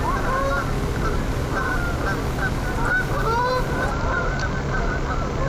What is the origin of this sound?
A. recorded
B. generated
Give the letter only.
A